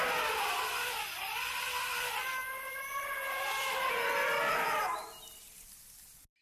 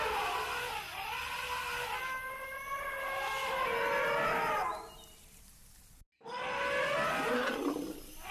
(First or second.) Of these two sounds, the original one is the second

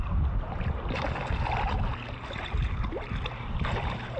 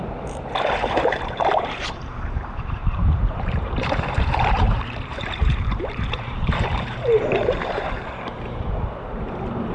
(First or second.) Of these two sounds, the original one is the first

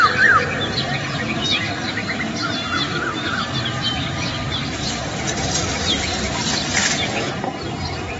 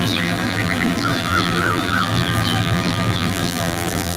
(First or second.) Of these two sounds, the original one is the first